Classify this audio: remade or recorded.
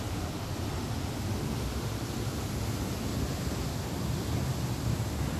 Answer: recorded